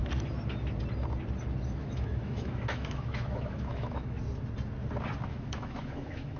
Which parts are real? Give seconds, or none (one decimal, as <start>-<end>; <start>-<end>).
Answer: 0.0-1.8; 4.2-5.3